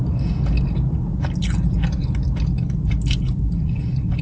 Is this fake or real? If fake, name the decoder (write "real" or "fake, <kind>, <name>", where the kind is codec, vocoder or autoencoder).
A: real